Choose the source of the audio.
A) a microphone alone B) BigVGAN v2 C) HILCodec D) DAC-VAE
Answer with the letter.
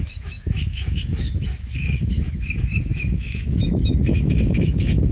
D